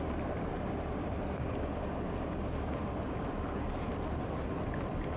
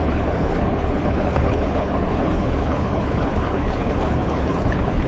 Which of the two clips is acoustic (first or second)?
first